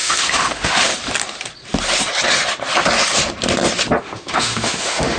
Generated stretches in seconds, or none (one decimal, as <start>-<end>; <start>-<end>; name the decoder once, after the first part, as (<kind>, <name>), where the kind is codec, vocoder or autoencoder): 0.0-0.9 (autoencoder, DAC-VAE); 4.0-5.2